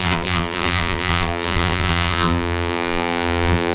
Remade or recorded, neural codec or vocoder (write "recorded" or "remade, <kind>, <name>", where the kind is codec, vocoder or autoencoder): remade, vocoder, BigVGAN v2